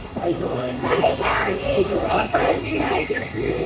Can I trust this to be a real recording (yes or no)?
no